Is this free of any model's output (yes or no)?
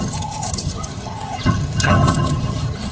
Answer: no